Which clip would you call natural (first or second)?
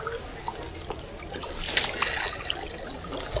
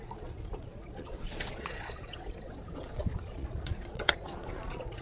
first